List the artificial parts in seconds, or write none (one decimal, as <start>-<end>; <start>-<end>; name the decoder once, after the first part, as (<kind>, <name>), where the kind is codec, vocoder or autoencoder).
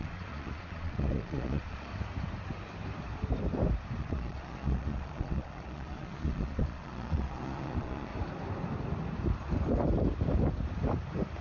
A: 0.0-1.9 (vocoder, Vocos); 4.0-8.1